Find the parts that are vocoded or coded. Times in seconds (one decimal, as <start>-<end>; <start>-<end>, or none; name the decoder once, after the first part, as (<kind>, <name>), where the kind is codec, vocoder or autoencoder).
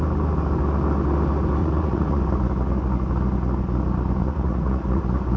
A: 1.6-2.2 (vocoder, Vocos); 4.2-5.0